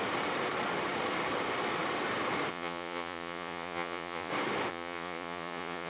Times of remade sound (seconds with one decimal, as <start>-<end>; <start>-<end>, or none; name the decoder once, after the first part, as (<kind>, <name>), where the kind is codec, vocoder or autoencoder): 2.5-4.3 (vocoder, Vocos); 4.7-5.9